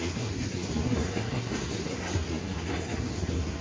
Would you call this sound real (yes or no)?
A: no